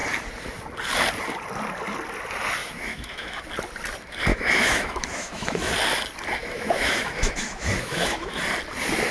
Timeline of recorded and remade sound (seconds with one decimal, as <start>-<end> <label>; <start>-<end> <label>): 0.0-2.6 recorded; 2.6-3.4 remade; 3.4-4.3 recorded; 4.3-5.7 remade; 5.7-6.4 recorded; 6.4-8.4 remade; 8.4-9.1 recorded